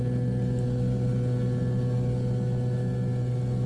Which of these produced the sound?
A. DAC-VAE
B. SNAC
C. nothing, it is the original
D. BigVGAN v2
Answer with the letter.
C